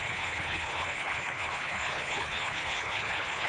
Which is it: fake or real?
fake